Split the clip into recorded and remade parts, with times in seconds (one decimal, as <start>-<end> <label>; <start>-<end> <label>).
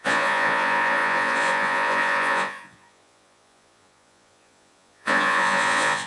0.0-6.1 remade